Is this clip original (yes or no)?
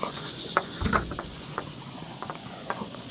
no